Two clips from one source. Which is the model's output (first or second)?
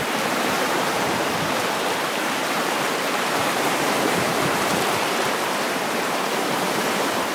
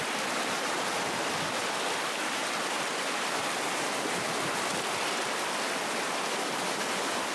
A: first